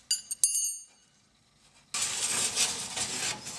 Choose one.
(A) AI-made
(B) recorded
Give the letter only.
B